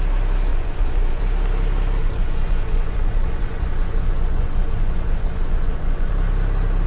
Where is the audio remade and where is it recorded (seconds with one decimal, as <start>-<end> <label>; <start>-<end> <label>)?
0.0-0.5 recorded; 0.5-1.2 remade; 1.2-2.0 recorded; 2.0-6.1 remade; 6.1-6.9 recorded